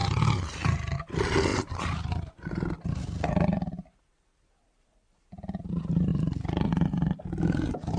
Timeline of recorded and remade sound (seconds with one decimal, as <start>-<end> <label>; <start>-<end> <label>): 0.0-6.1 recorded; 6.1-8.0 remade